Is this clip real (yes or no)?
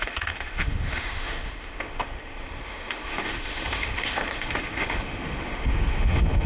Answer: no